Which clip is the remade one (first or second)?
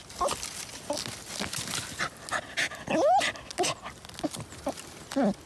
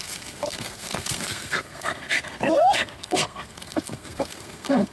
second